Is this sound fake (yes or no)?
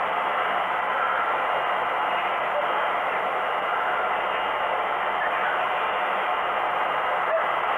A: no